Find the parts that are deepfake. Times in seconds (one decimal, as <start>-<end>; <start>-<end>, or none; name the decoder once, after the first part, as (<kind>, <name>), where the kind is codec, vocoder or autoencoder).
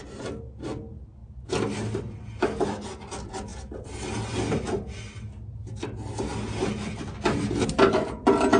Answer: none